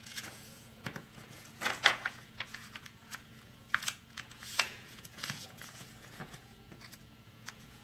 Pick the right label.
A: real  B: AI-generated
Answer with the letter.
B